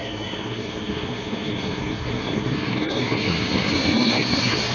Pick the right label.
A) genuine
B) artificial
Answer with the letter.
B